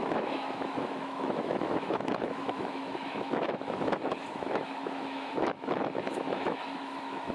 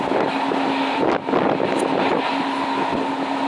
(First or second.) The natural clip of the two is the second